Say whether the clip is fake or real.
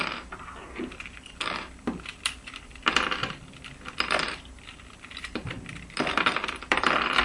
fake